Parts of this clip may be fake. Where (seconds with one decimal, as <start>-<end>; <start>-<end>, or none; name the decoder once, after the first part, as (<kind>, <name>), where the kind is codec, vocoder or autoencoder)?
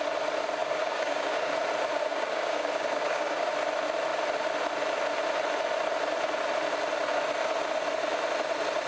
0.6-1.5 (codec, DAC); 1.9-3.5